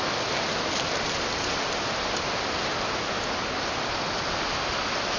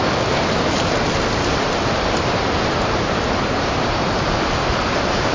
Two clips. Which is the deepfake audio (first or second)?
second